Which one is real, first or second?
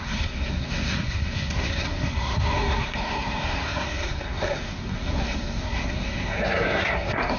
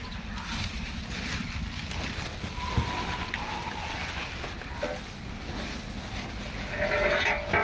second